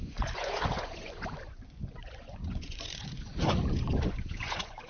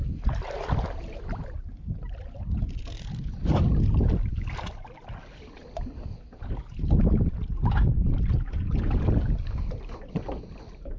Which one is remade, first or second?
first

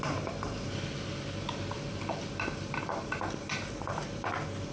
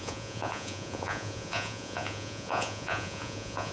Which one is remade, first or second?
second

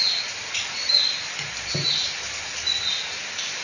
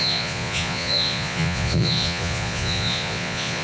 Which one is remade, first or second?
second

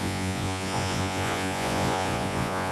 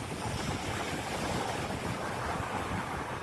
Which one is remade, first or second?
first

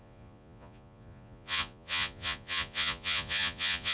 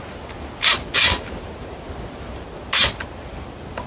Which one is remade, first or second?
first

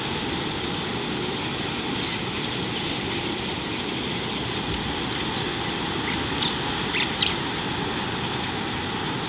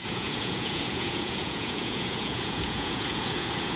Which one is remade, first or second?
second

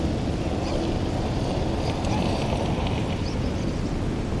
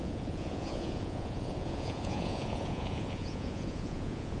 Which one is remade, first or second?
second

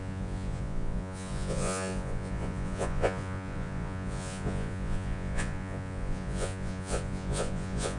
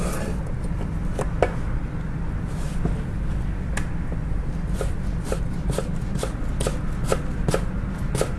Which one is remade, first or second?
first